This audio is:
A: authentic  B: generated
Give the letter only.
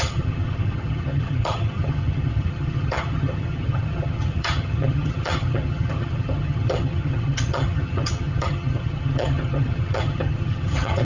B